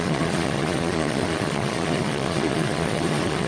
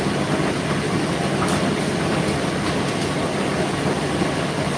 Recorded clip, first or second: second